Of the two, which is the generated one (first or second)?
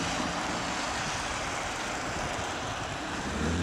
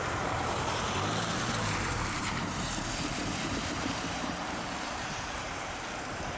second